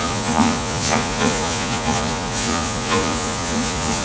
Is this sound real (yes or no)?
no